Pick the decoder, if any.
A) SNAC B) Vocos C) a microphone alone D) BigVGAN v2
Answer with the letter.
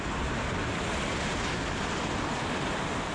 C